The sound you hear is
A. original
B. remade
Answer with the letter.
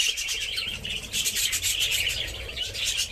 B